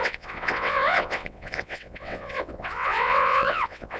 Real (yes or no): no